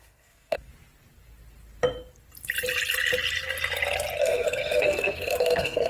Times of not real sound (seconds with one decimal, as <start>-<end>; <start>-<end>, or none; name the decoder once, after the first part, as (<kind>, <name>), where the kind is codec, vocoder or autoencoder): 0.0-0.7 (codec, SNAC); 4.2-5.9